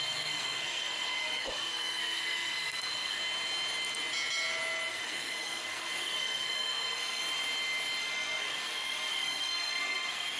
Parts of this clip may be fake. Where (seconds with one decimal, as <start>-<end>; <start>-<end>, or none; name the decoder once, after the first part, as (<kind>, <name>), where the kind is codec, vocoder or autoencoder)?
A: 0.0-3.2 (codec, SNAC); 4.9-7.2; 8.0-10.4